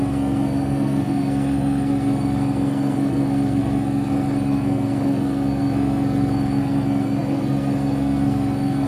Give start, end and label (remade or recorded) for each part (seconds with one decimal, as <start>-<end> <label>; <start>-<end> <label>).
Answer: 0.0-8.9 remade